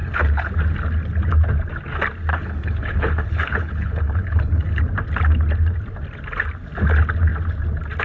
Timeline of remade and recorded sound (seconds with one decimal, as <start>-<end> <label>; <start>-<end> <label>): 0.0-0.5 remade; 0.5-2.3 recorded; 2.3-4.8 remade; 4.8-8.0 recorded